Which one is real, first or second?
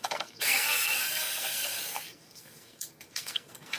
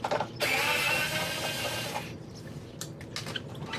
second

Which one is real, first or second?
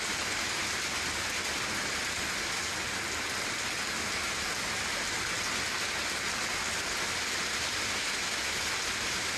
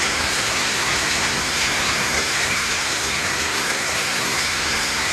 first